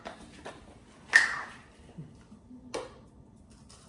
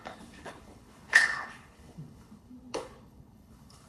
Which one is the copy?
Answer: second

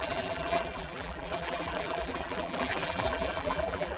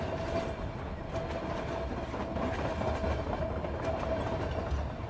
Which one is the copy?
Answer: first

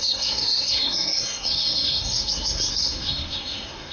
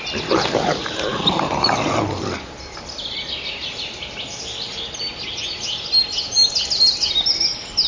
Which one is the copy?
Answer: first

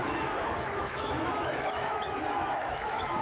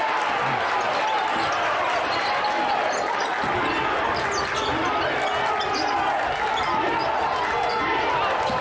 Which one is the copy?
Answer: first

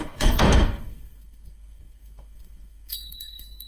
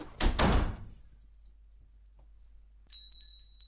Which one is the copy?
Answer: first